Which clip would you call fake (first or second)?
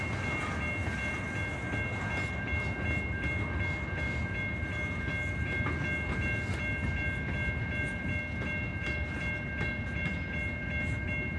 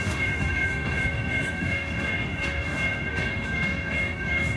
second